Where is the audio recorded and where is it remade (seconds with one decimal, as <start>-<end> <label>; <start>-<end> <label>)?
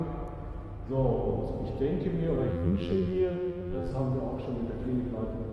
0.0-2.5 recorded; 2.5-3.9 remade; 3.9-5.5 recorded